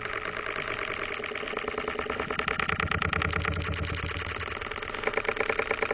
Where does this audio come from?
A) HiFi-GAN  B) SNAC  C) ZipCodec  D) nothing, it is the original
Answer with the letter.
D